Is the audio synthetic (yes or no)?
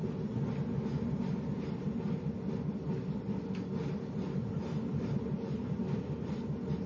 no